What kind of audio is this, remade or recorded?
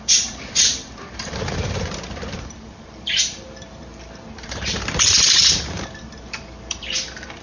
remade